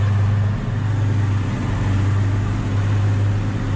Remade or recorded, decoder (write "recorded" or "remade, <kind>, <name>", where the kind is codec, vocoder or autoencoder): recorded